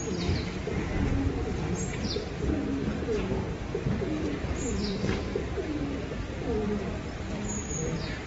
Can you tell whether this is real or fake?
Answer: real